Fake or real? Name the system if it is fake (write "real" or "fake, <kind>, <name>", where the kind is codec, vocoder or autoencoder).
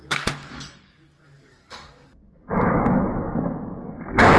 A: fake, codec, DAC